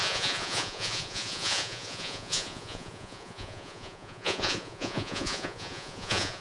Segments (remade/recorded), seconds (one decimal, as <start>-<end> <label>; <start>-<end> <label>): 0.0-6.4 remade